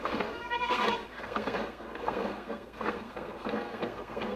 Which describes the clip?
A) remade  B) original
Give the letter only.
A